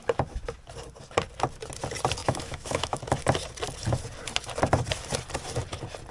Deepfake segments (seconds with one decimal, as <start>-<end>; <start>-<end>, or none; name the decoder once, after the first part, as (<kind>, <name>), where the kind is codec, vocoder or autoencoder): 2.2-3.0 (autoencoder, DAC-VAE)